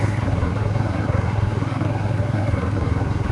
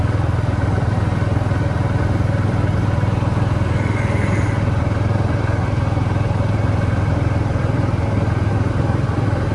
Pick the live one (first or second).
second